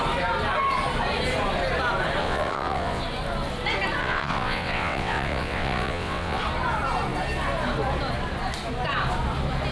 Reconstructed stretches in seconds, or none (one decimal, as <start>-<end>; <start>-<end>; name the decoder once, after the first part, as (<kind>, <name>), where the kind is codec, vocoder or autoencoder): 2.2-3.0 (vocoder, WaveNeXt); 4.0-6.4